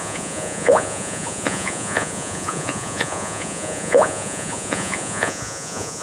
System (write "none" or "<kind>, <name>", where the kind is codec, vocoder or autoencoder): vocoder, Vocos